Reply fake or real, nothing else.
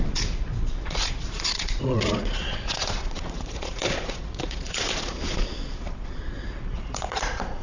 fake